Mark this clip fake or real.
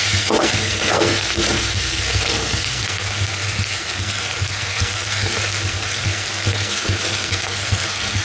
fake